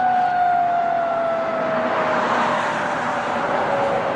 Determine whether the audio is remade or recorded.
recorded